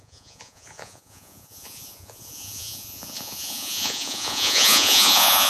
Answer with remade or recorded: remade